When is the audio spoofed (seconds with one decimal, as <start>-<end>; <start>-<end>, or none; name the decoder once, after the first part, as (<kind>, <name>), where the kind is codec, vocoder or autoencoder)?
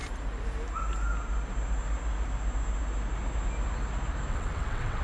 4.3-5.0 (vocoder, WaveNeXt)